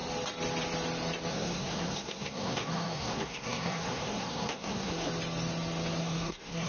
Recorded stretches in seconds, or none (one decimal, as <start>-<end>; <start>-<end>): 0.0-1.3; 5.1-6.0